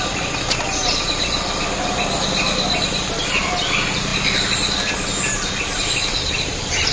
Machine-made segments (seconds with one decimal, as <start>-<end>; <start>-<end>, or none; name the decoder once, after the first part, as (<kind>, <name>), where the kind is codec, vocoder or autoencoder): 0.0-6.9 (vocoder, BigVGAN v2)